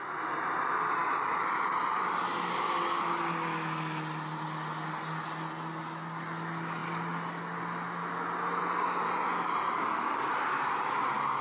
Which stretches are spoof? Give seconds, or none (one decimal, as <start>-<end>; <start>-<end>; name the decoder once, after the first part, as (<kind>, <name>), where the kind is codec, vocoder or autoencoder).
none